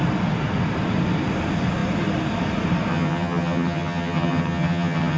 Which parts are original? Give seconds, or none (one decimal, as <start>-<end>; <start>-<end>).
0.0-2.9